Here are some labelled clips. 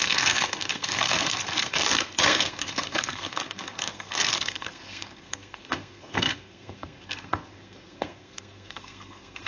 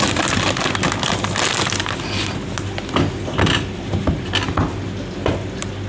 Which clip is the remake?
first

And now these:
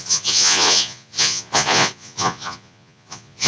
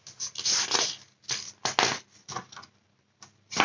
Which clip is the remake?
first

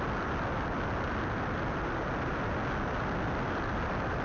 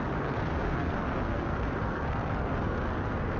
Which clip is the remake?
second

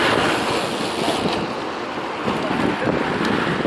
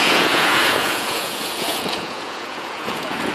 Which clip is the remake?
second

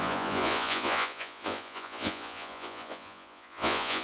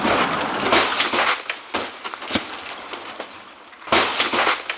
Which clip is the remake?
first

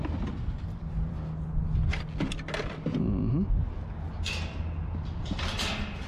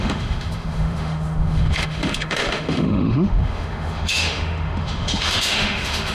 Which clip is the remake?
second